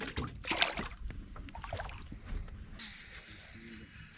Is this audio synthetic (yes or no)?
no